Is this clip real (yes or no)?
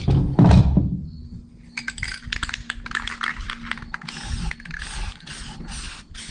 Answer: yes